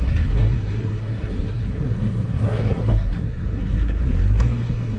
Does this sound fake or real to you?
fake